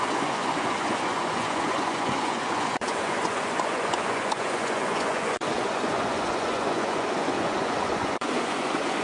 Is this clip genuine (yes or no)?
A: no